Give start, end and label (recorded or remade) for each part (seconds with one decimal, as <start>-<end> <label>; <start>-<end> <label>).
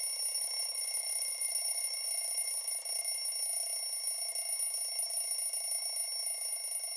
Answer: 0.0-0.4 recorded; 0.4-3.0 remade; 3.0-7.0 recorded